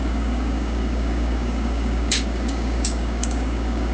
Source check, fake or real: fake